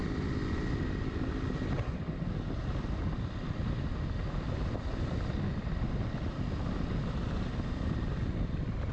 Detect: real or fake real